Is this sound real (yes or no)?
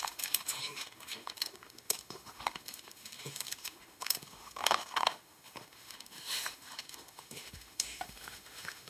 no